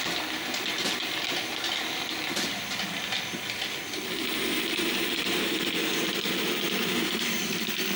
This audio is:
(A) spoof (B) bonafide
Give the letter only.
B